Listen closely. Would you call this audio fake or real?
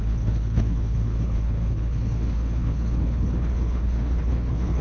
fake